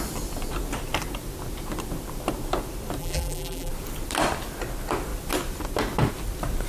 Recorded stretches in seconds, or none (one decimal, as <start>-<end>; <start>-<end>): 0.0-3.0; 3.7-6.7